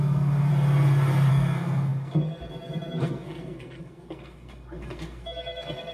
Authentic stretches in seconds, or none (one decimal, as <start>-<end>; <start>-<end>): 0.5-1.3